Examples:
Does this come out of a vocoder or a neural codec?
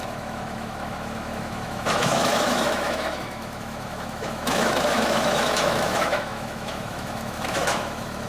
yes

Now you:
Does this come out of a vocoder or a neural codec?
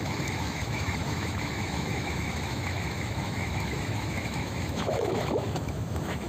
yes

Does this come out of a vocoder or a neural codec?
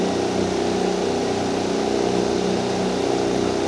no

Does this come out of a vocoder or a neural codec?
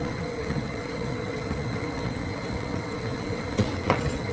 yes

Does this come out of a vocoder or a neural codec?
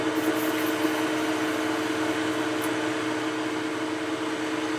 no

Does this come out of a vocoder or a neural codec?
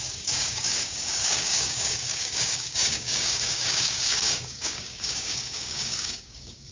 yes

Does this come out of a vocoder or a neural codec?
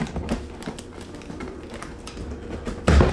no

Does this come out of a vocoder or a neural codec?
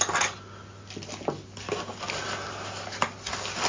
no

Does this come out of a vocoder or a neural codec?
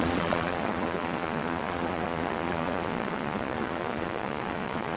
yes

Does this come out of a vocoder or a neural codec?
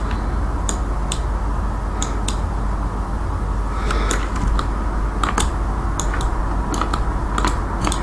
no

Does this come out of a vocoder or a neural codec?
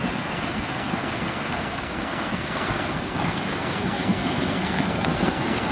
yes